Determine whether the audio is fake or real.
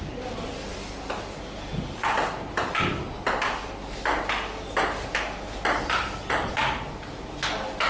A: real